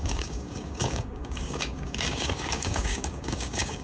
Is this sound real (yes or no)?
no